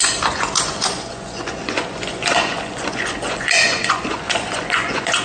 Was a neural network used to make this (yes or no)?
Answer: yes